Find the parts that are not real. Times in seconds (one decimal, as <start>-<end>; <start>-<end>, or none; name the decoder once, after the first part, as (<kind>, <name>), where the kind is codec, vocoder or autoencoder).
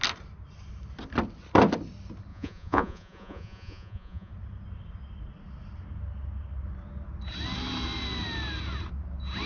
2.3-4.3 (vocoder, Vocos)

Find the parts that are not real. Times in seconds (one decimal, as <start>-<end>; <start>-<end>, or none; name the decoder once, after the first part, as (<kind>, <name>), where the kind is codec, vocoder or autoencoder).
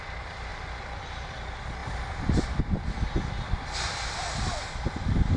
0.5-1.3 (vocoder, BigVGAN v2); 1.8-2.6